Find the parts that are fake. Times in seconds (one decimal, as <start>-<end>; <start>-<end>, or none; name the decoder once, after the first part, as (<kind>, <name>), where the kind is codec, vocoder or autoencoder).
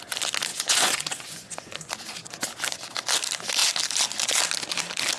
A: 0.5-1.9 (vocoder, Vocos)